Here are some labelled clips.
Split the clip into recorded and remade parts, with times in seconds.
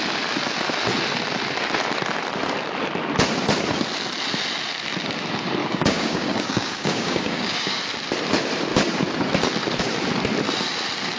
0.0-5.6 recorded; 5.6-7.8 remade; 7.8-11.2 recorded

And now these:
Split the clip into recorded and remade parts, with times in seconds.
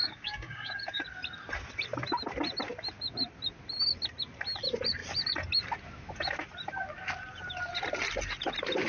0.0-1.0 remade; 1.0-8.9 recorded